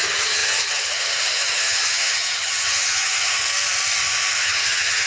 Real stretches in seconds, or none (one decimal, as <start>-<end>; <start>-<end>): 3.4-4.4

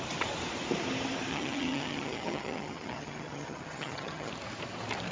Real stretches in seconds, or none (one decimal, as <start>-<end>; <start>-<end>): 0.0-1.3; 4.3-5.1

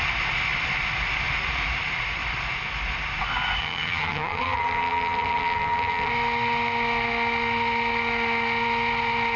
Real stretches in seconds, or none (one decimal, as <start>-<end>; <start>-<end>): 0.0-3.6; 6.1-9.4

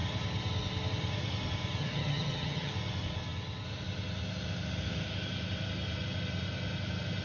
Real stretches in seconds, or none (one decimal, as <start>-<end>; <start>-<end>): 0.0-1.8; 2.7-7.2

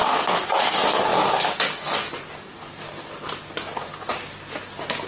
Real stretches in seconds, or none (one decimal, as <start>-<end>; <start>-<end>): 0.0-5.1

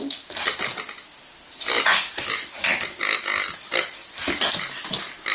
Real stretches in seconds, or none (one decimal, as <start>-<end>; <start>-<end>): 0.0-5.3

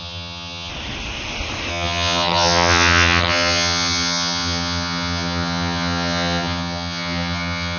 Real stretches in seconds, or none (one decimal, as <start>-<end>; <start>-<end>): 0.7-1.7